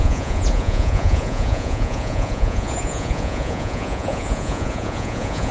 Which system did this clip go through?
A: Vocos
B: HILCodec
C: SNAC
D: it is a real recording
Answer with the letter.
A